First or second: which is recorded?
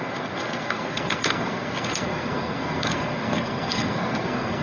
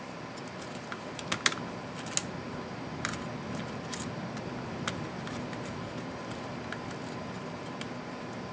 second